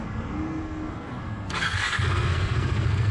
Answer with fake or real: fake